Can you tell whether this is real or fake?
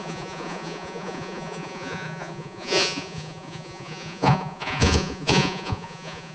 fake